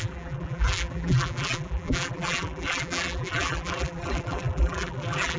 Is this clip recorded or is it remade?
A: remade